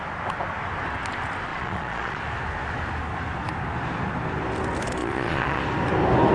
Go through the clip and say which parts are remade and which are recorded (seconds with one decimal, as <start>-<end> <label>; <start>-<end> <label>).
0.0-1.5 recorded; 1.5-2.2 remade; 2.2-5.0 recorded; 5.0-5.6 remade; 5.6-6.3 recorded